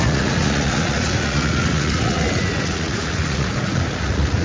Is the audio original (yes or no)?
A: no